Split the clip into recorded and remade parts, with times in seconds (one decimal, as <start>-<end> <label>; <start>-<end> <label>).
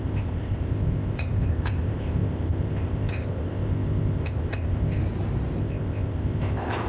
0.0-5.0 remade; 5.0-5.6 recorded; 5.6-6.9 remade